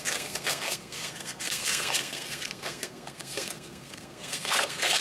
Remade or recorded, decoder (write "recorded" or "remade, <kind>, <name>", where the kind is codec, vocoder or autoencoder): remade, codec, SNAC